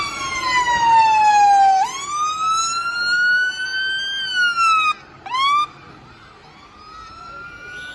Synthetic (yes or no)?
no